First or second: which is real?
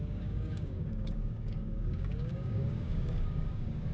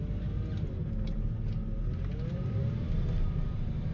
second